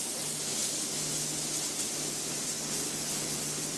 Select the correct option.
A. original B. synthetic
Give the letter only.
A